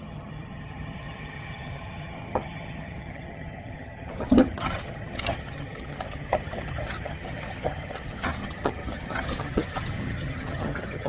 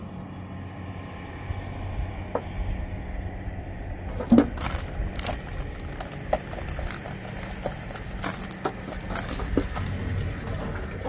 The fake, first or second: first